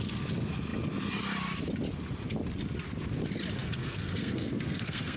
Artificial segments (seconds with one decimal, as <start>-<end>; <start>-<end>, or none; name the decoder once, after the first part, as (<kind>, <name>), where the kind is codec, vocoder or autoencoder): 3.6-5.2 (codec, SNAC)